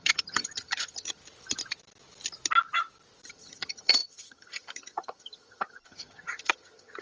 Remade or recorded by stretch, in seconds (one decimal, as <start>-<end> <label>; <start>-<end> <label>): 0.0-1.2 remade; 1.2-3.3 recorded; 3.3-7.0 remade